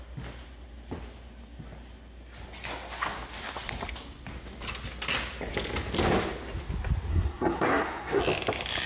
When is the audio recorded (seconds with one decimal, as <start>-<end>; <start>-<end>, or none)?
0.0-7.1; 8.2-8.9